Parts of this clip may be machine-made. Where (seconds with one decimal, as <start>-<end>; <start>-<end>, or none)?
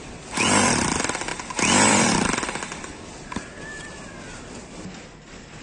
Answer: none